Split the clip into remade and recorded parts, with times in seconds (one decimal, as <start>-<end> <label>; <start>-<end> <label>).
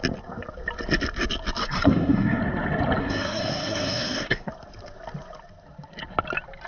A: 0.0-1.6 recorded; 1.6-2.4 remade; 2.4-3.0 recorded; 3.0-4.5 remade; 4.5-6.7 recorded